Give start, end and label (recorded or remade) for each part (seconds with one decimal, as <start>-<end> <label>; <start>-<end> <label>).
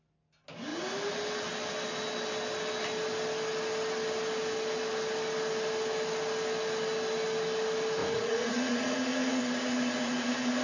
0.0-8.0 recorded; 8.0-9.4 remade; 9.4-10.6 recorded